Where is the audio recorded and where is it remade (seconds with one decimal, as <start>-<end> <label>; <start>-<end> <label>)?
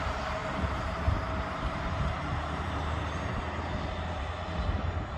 0.0-0.4 recorded; 0.4-3.0 remade; 3.0-5.2 recorded